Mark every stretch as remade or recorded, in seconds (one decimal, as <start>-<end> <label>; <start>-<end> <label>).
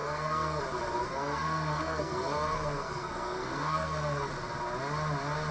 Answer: 0.0-0.6 remade; 0.6-1.0 recorded; 1.0-4.3 remade; 4.3-5.5 recorded